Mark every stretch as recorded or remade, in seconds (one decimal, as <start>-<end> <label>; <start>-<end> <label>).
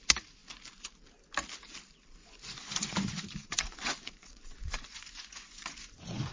0.0-2.2 recorded; 2.2-6.3 remade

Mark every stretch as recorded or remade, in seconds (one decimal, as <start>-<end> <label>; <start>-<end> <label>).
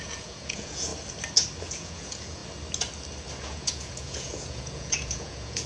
0.0-0.9 remade; 0.9-1.6 recorded; 1.6-2.4 remade; 2.4-3.4 recorded; 3.4-5.7 remade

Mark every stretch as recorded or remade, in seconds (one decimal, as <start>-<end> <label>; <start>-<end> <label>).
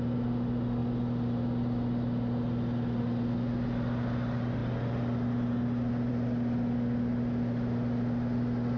0.0-8.8 recorded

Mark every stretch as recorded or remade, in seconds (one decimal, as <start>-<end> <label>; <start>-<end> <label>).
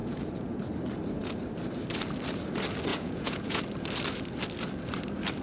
0.0-0.6 remade; 0.6-2.9 recorded; 2.9-3.6 remade; 3.6-5.4 recorded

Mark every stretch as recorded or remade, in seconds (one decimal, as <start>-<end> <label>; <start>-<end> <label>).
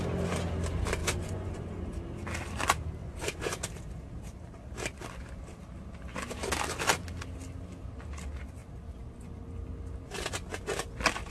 0.0-1.0 recorded; 1.0-2.0 remade; 2.0-3.0 recorded; 3.0-3.6 remade; 3.6-11.3 recorded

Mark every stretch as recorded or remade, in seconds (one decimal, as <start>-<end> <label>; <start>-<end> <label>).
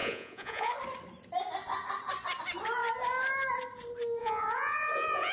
0.0-0.7 remade; 0.7-4.2 recorded; 4.2-5.3 remade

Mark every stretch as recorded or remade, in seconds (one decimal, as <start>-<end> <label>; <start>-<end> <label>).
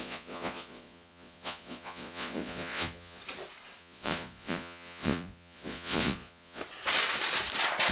0.0-3.2 remade; 3.2-3.8 recorded; 3.8-6.6 remade; 6.6-7.9 recorded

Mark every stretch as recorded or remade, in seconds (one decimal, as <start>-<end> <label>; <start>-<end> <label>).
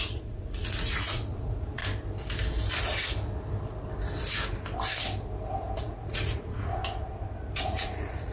0.0-1.8 remade; 1.8-5.8 recorded; 5.8-6.8 remade; 6.8-7.6 recorded; 7.6-8.3 remade